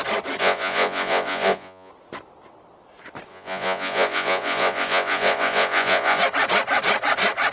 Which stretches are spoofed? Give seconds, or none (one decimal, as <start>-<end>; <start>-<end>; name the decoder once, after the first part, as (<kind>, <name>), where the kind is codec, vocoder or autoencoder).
0.4-1.9 (vocoder, Vocos); 3.3-6.2